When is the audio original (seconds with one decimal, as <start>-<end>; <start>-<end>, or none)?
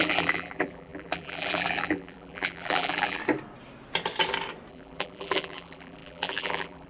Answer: 3.2-4.7